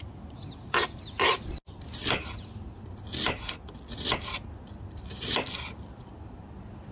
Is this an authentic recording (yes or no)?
yes